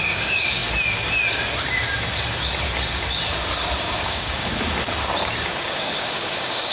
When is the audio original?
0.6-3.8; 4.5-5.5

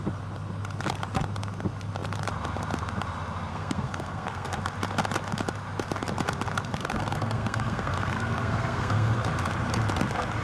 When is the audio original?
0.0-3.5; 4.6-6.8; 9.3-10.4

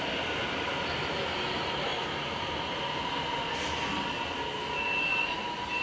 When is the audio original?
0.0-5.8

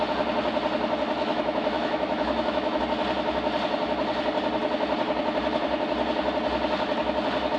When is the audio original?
0.0-1.2; 2.8-7.6